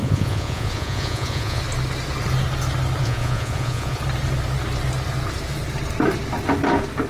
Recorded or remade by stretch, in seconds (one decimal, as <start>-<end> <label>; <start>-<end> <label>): 0.0-1.6 remade; 1.6-3.0 recorded; 3.0-4.0 remade; 4.0-7.1 recorded